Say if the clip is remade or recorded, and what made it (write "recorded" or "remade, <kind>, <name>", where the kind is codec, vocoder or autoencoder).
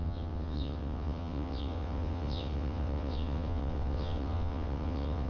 remade, vocoder, WaveNeXt